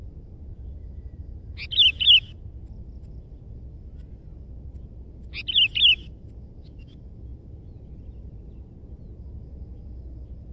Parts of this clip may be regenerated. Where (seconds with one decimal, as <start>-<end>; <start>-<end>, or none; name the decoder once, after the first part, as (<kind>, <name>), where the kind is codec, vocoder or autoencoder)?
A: none